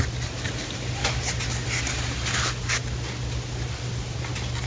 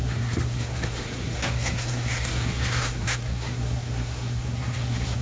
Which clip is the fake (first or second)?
second